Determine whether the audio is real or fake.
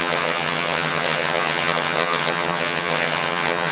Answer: fake